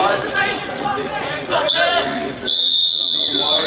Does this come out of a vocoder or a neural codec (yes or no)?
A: yes